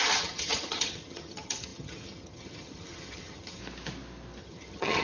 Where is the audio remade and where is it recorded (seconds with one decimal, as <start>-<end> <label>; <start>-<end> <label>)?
0.0-3.6 remade; 3.6-4.4 recorded; 4.4-5.0 remade